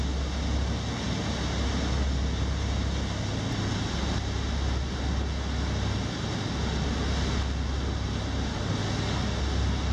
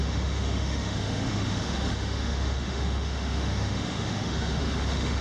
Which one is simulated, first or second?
second